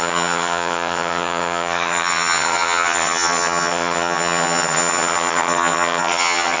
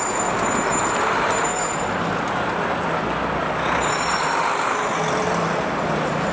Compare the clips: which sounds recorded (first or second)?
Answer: second